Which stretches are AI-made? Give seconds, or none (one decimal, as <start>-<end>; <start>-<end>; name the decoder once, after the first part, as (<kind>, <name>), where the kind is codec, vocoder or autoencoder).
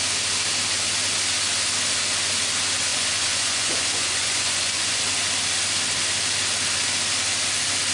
2.9-5.0 (vocoder, Vocos)